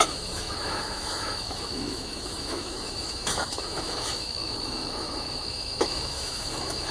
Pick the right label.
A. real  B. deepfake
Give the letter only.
B